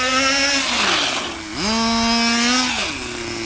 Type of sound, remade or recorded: recorded